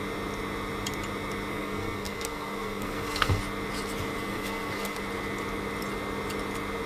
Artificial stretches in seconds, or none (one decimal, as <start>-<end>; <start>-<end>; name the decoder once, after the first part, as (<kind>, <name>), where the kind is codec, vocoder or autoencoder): 1.5-3.4 (codec, SNAC); 4.2-5.0